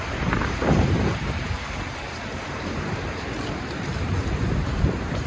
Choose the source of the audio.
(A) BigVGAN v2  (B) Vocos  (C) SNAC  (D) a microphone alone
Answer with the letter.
A